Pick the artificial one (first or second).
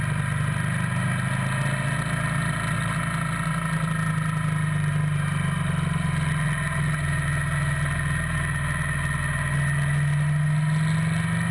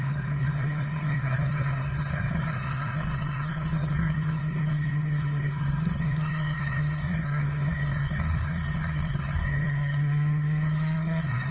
second